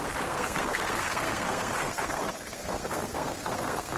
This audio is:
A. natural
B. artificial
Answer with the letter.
B